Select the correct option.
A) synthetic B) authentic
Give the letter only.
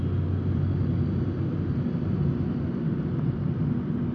B